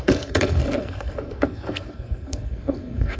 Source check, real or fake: fake